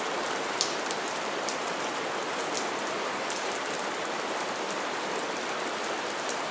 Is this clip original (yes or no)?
no